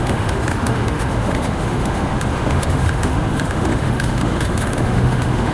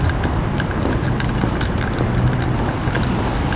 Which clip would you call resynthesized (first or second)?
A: first